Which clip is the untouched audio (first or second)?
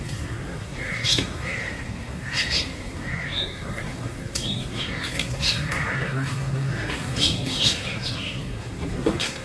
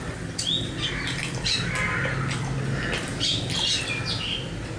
second